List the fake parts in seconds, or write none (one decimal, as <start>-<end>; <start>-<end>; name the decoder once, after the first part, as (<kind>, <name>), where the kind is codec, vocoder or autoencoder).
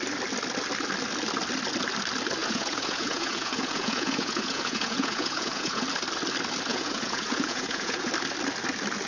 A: 2.4-5.8 (vocoder, Vocos); 6.7-8.1